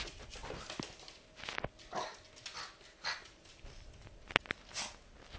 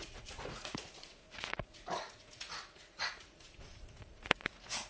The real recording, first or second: first